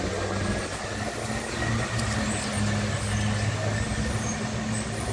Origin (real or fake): real